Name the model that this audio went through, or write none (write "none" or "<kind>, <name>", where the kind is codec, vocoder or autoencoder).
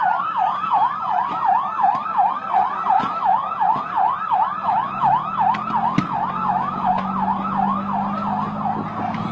none